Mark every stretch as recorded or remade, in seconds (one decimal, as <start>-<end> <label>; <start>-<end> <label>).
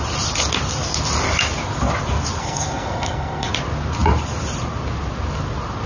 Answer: 0.0-2.4 recorded; 2.4-3.5 remade; 3.5-5.9 recorded